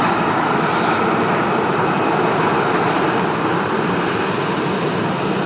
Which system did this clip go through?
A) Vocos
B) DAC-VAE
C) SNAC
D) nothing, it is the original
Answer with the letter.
D